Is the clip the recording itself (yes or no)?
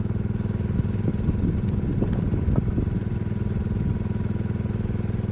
yes